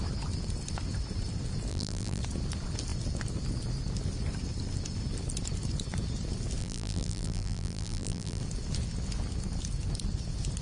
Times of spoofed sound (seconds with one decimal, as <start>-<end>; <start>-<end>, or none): 1.7-2.2; 6.6-8.4